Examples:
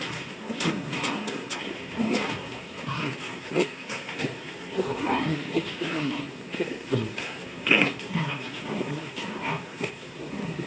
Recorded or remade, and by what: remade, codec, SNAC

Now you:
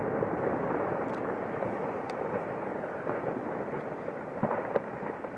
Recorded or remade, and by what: recorded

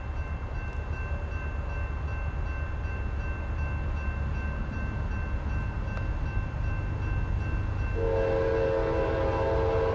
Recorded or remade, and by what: recorded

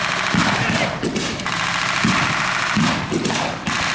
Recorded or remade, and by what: recorded